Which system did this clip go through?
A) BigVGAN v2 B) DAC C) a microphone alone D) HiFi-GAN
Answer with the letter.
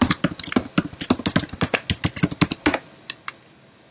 C